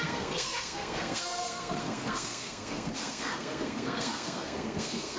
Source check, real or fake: fake